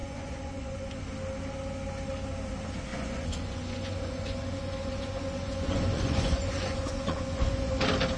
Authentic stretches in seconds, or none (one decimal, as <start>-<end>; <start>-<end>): 1.0-2.9; 7.7-8.2